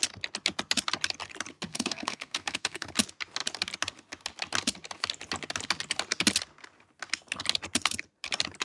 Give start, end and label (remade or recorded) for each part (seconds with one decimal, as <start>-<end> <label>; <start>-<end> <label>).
0.0-1.7 recorded; 1.7-2.9 remade; 2.9-8.6 recorded